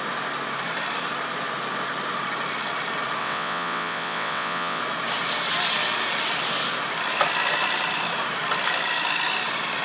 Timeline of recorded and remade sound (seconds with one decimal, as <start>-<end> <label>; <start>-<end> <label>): 0.0-3.2 recorded; 3.2-4.8 remade; 4.8-9.8 recorded